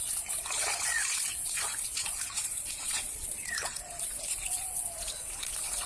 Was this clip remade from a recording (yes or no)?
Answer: yes